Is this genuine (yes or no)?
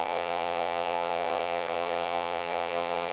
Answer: no